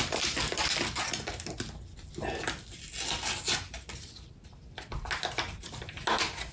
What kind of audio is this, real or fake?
real